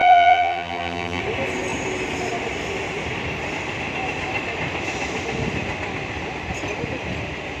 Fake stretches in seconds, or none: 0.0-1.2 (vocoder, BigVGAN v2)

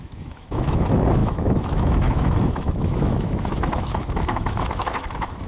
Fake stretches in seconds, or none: 0.0-5.5 (autoencoder, DAC-VAE)

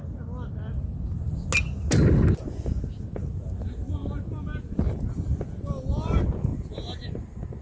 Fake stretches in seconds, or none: none